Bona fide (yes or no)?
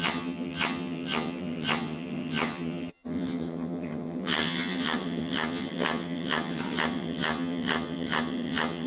no